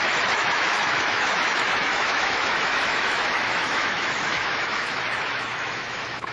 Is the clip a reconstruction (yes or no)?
yes